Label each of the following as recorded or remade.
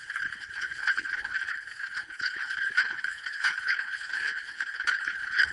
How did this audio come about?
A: remade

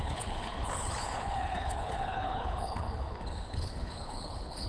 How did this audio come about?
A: remade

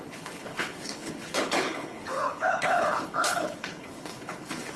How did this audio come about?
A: remade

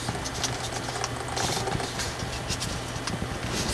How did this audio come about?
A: recorded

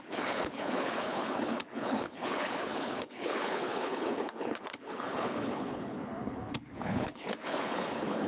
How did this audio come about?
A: remade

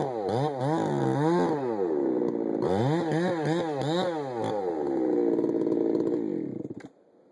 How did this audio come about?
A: recorded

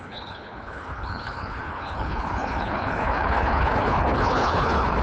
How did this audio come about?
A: remade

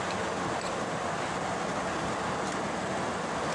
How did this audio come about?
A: recorded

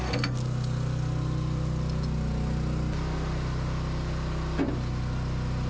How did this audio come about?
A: recorded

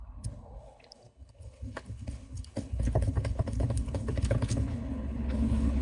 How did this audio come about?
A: remade